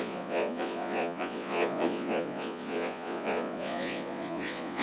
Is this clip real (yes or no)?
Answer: no